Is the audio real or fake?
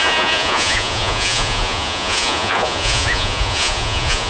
fake